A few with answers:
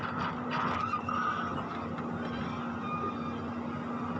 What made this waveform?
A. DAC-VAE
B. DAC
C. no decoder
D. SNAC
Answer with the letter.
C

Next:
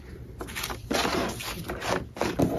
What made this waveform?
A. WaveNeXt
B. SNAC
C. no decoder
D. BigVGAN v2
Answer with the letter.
C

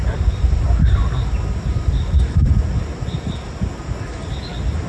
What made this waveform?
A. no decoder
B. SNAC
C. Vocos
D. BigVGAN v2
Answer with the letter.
A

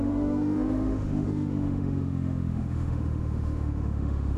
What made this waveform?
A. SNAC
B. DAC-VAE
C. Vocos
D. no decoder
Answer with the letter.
B